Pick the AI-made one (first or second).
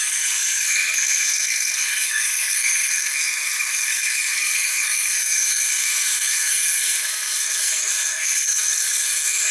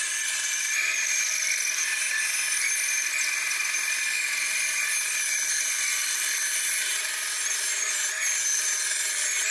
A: first